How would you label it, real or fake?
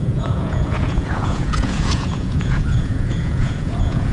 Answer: fake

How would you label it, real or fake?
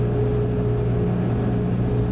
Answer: real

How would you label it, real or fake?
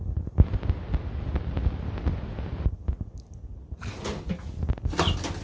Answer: real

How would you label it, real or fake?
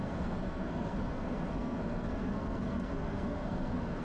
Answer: fake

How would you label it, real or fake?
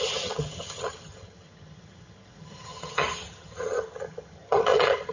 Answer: fake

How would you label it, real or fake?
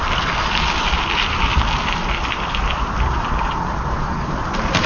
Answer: real